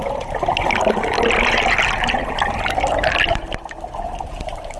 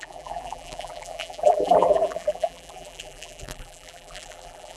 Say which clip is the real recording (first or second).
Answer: first